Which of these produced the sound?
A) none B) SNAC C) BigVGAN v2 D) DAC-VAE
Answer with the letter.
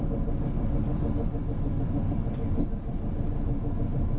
A